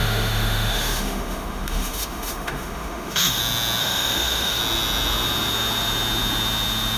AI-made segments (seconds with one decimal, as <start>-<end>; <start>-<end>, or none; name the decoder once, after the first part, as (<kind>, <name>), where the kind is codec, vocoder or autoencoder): 0.0-3.4 (autoencoder, DAC-VAE); 3.8-4.6